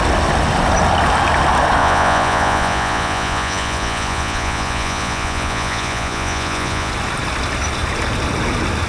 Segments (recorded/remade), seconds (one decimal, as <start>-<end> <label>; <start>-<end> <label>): 0.0-1.8 recorded; 1.8-6.9 remade; 6.9-8.9 recorded